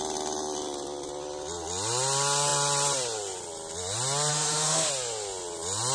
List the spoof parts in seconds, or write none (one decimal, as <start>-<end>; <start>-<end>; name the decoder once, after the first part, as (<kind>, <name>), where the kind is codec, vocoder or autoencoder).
4.3-4.9 (autoencoder, DAC-VAE)